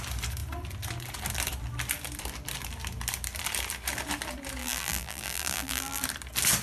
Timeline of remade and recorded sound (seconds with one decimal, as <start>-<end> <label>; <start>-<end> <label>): 0.0-4.6 recorded; 4.6-6.0 remade; 6.0-6.6 recorded